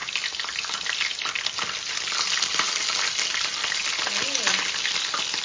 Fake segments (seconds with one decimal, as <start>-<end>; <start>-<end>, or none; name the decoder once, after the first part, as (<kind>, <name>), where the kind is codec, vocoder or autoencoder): none